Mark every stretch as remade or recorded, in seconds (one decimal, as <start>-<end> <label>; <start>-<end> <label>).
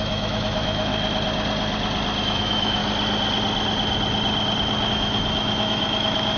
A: 0.0-0.9 remade; 0.9-2.2 recorded; 2.2-2.8 remade; 2.8-4.9 recorded; 4.9-6.4 remade